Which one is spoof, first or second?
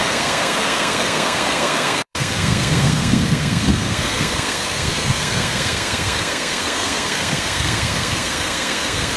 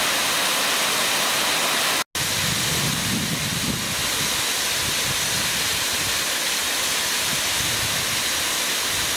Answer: first